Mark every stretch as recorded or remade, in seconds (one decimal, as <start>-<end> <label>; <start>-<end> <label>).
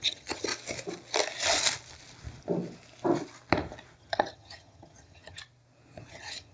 0.0-0.5 remade; 0.5-4.0 recorded; 4.0-5.4 remade; 5.4-6.1 recorded; 6.1-6.5 remade